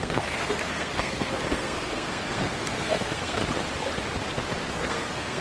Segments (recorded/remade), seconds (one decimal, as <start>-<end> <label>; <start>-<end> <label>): 0.0-3.4 remade; 3.4-4.7 recorded; 4.7-5.4 remade